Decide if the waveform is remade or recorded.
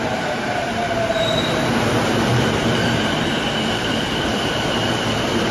remade